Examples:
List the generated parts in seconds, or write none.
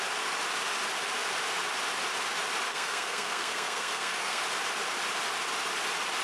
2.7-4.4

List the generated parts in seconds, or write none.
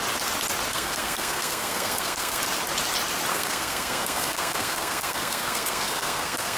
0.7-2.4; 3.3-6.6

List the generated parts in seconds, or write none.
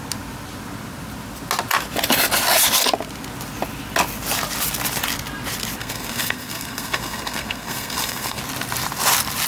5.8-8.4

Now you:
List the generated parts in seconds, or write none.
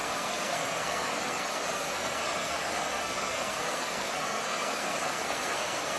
0.0-6.0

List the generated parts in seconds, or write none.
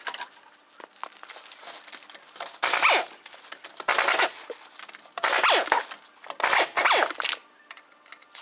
none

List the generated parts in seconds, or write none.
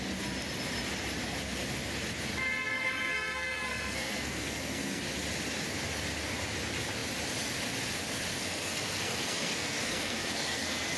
2.7-5.0; 8.3-11.0